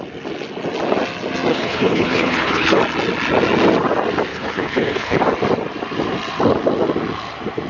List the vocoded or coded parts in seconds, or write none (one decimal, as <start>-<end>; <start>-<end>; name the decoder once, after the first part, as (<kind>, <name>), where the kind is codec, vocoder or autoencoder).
1.5-2.8 (codec, HILCodec); 4.3-5.2